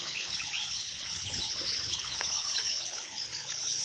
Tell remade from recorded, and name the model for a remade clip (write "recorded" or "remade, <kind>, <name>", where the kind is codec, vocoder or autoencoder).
remade, codec, HILCodec